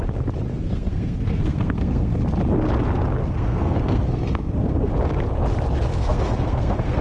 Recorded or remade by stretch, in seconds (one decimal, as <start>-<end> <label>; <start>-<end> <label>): 0.0-0.5 recorded; 0.5-2.2 remade; 2.2-3.2 recorded; 3.2-4.9 remade; 4.9-5.9 recorded; 5.9-7.0 remade

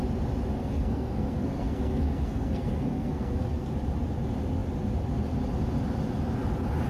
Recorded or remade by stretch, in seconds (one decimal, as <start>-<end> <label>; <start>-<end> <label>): 0.0-0.6 recorded; 0.6-3.7 remade; 3.7-6.9 recorded

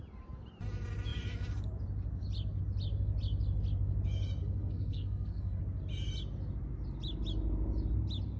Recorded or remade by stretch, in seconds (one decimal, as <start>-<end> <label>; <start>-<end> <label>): 0.0-4.4 recorded; 4.4-5.6 remade; 5.6-8.4 recorded

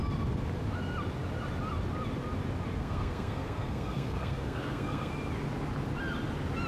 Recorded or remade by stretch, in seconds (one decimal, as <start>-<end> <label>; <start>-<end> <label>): 0.0-2.8 recorded; 2.8-5.1 remade; 5.1-6.7 recorded

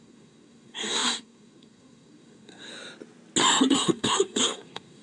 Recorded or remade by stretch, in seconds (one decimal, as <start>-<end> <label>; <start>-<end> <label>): 0.0-2.7 remade; 2.7-3.7 recorded; 3.7-5.0 remade

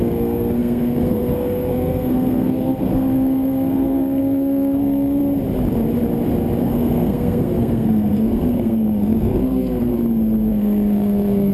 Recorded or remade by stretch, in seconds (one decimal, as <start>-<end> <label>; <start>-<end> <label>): 0.0-5.2 remade; 5.2-6.6 recorded; 6.6-9.9 remade; 9.9-10.5 recorded; 10.5-11.5 remade

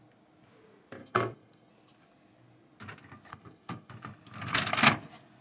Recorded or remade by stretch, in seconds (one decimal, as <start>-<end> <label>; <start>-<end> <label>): 0.0-1.0 recorded; 1.0-1.7 remade; 1.7-3.3 recorded; 3.3-3.9 remade; 3.9-5.4 recorded